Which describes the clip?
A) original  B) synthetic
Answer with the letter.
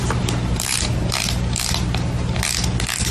A